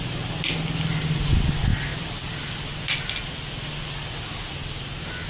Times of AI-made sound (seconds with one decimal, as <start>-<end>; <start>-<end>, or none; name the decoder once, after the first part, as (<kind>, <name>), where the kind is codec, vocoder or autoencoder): none